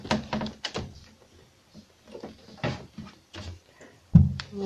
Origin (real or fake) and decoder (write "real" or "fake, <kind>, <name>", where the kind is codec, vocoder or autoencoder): fake, vocoder, BigVGAN v2